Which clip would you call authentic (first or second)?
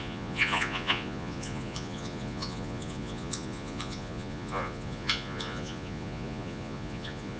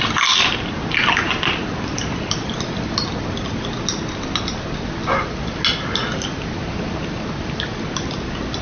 second